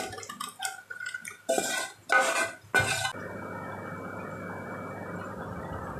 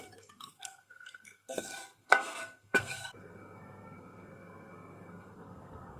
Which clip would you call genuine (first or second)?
first